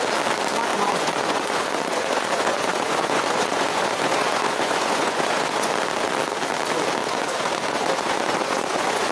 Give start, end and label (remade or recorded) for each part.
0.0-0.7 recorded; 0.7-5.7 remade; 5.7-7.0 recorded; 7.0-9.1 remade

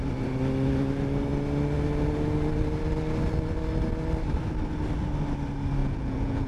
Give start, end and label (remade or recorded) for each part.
0.0-5.8 recorded; 5.8-6.5 remade

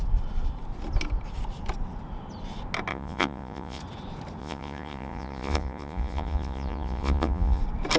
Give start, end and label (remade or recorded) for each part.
0.0-2.9 recorded; 2.9-3.8 remade; 3.8-4.4 recorded; 4.4-7.6 remade; 7.6-8.0 recorded

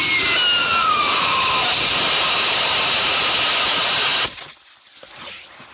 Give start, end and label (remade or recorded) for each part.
0.0-0.6 recorded; 0.6-1.3 remade; 1.3-5.7 recorded